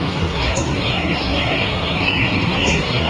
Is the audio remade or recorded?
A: remade